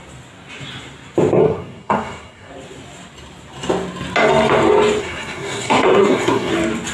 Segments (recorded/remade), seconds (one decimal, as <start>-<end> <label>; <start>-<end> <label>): 0.0-1.4 recorded; 1.4-2.5 remade; 2.5-5.0 recorded; 5.0-6.5 remade; 6.5-6.9 recorded